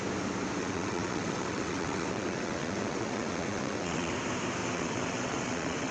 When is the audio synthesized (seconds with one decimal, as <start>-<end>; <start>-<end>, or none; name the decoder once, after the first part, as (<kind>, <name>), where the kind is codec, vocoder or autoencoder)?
0.6-4.1 (vocoder, WaveNeXt); 4.6-5.9